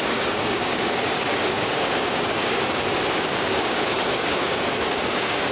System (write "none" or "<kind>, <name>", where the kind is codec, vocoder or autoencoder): codec, DAC